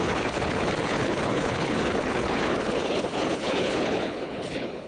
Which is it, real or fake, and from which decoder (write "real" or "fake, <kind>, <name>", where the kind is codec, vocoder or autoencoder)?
fake, codec, HILCodec